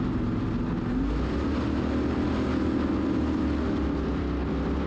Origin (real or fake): real